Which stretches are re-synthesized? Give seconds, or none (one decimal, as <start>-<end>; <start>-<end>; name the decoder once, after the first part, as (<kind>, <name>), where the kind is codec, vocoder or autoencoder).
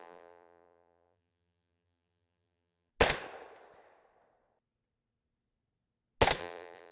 0.0-2.9 (vocoder, BigVGAN v2); 6.4-6.9